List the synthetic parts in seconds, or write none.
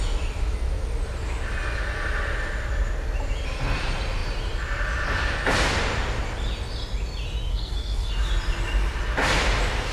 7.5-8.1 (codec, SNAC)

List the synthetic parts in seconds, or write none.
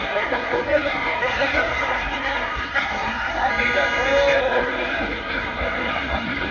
0.0-3.5 (codec, SNAC); 4.4-6.5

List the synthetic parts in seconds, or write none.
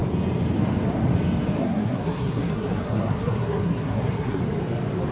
1.6-4.4 (codec, SNAC)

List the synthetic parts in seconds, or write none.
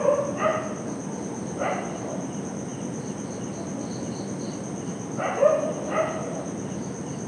none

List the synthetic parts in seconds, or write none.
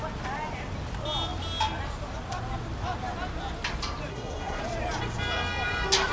4.1-4.6 (codec, SNAC)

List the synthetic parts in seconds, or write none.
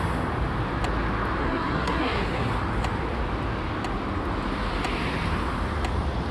1.4-2.5 (codec, SNAC)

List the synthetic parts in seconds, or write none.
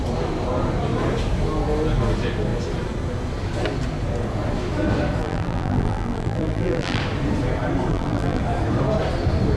5.2-7.0 (vocoder, BigVGAN v2); 7.9-8.4